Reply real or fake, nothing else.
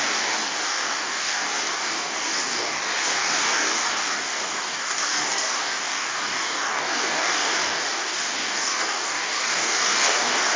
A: fake